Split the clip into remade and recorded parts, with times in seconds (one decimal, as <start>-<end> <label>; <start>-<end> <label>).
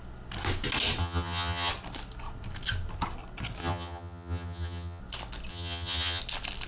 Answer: 0.0-1.0 recorded; 1.0-1.7 remade; 1.7-3.6 recorded; 3.6-5.0 remade; 5.0-5.5 recorded; 5.5-6.2 remade; 6.2-6.7 recorded